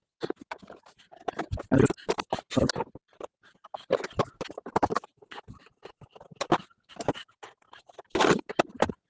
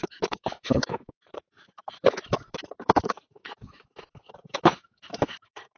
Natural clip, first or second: first